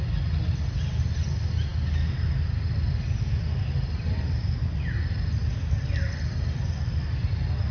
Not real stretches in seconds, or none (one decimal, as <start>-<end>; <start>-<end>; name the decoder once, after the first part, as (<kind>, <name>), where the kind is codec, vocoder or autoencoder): none